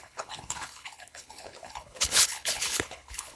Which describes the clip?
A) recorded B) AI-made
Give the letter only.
B